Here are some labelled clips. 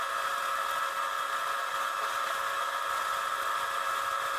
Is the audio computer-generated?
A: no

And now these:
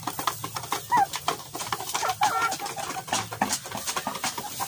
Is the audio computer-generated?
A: no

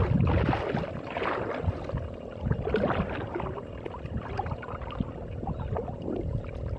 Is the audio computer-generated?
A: no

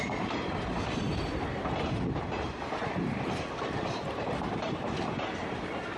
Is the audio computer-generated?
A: yes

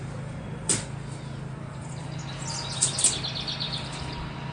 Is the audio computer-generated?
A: no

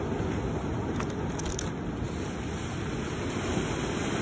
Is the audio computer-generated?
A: no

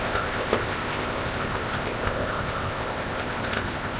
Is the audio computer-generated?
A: yes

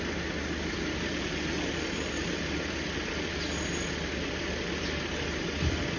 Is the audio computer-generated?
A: no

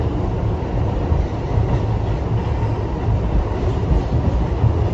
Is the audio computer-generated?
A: no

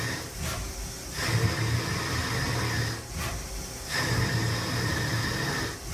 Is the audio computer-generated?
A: no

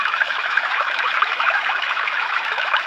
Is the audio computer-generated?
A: yes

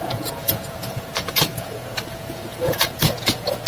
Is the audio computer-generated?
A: yes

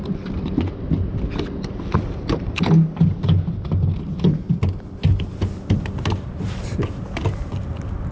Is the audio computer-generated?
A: no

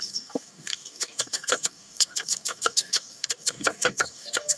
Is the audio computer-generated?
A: yes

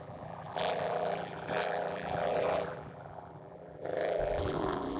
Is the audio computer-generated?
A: yes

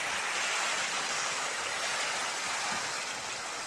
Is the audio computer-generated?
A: no